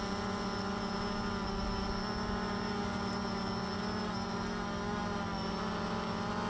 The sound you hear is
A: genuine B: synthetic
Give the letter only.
A